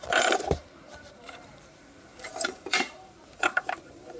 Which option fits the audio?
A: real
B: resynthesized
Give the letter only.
B